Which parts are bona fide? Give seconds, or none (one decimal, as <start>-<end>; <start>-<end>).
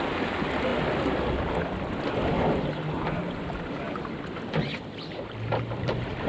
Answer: 0.0-6.3